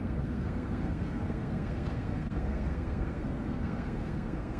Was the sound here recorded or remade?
remade